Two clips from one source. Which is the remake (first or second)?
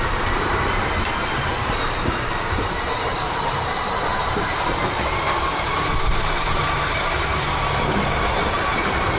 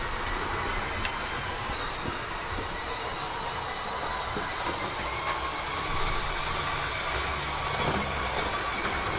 first